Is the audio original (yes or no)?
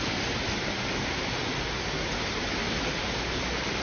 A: yes